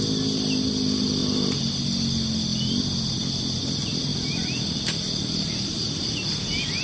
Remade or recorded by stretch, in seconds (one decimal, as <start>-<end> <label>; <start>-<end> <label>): 0.0-6.8 recorded